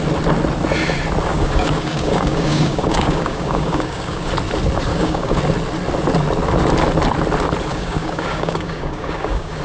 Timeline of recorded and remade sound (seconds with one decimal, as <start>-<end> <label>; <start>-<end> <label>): 0.0-1.3 recorded; 1.3-4.3 remade; 4.3-4.9 recorded; 4.9-5.4 remade; 5.4-7.7 recorded; 7.7-9.6 remade